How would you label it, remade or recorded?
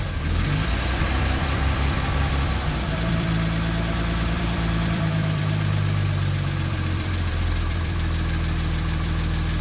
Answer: remade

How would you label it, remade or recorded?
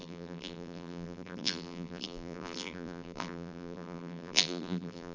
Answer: remade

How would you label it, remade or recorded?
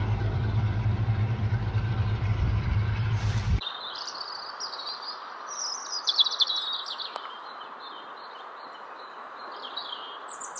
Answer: remade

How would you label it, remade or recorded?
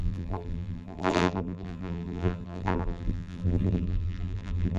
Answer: remade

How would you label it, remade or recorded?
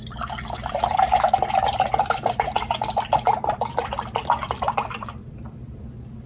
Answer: remade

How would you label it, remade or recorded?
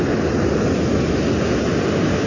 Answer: recorded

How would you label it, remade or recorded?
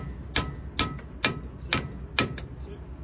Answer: recorded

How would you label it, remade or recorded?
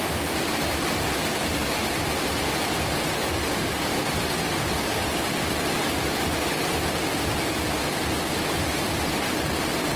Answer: recorded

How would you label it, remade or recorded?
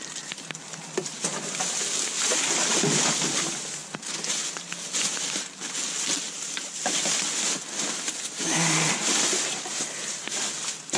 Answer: recorded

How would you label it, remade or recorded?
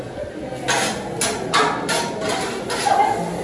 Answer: recorded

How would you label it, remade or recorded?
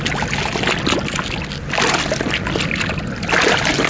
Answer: recorded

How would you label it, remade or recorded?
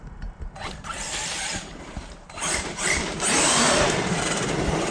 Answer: remade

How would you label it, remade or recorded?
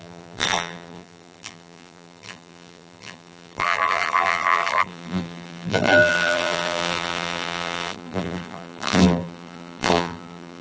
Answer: remade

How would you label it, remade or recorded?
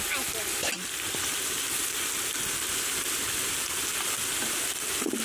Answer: recorded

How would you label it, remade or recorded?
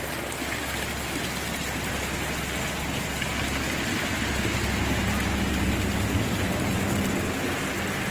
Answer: recorded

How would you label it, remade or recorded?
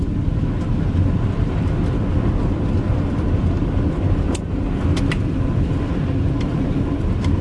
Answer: recorded